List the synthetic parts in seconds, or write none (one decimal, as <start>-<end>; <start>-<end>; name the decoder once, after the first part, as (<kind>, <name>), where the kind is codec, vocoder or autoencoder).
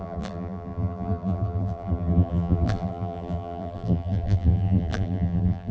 0.0-5.7 (vocoder, BigVGAN v2)